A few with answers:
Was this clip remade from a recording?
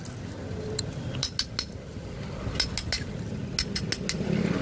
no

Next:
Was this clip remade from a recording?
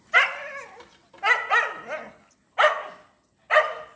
no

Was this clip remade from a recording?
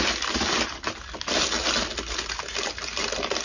no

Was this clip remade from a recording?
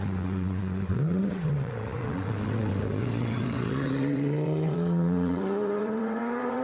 yes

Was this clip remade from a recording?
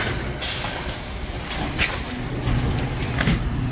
no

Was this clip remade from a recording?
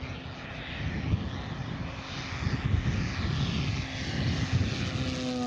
no